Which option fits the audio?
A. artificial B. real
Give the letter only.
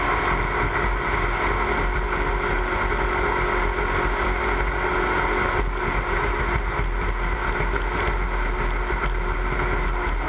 B